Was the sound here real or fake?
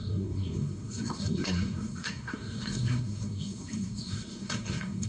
fake